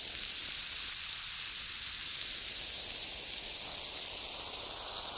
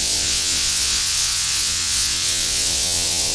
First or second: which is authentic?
first